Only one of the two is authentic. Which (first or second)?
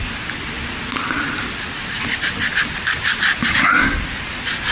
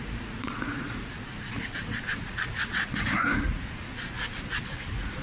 first